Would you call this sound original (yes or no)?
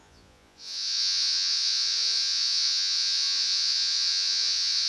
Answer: no